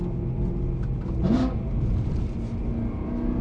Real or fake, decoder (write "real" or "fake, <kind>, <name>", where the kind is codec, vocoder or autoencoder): real